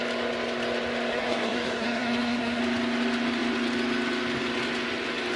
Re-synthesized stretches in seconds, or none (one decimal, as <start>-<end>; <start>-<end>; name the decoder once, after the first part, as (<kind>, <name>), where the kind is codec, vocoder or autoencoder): 1.1-2.6 (codec, SNAC)